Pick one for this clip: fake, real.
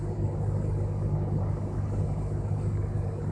fake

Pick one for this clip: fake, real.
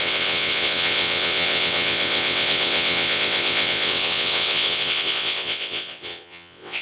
fake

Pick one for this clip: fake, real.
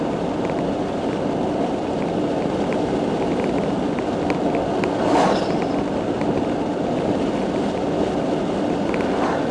real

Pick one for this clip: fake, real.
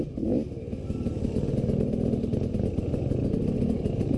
real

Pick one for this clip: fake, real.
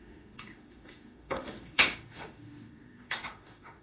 fake